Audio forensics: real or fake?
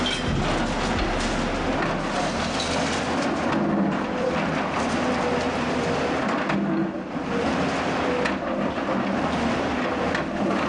real